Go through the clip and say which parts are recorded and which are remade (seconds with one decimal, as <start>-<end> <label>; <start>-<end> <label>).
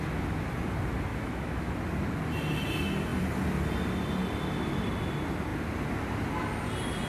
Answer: 0.0-1.1 recorded; 1.1-1.7 remade; 1.7-7.1 recorded